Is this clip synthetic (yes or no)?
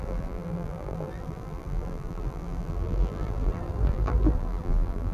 yes